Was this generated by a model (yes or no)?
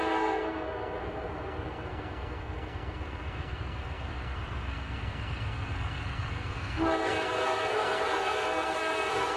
yes